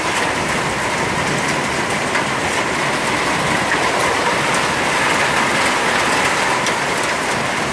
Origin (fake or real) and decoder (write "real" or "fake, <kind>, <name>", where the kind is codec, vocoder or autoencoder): real